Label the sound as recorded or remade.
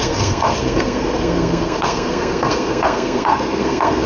remade